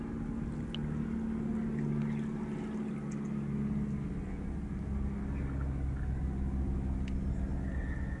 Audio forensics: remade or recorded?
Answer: recorded